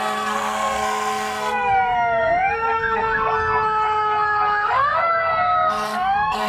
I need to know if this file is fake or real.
fake